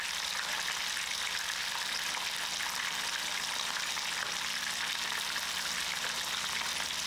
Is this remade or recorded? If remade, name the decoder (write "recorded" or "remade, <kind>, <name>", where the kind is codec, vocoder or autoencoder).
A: recorded